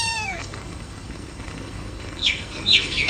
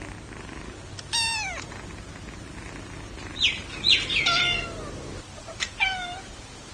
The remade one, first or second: first